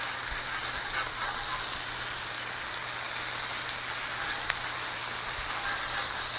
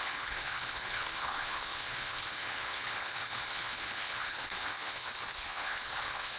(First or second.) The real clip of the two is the first